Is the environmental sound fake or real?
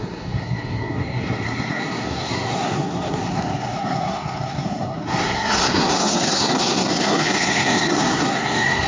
fake